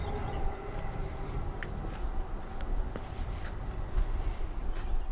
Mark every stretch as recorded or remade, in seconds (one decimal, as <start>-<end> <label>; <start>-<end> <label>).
0.0-5.1 recorded